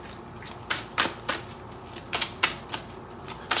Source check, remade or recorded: recorded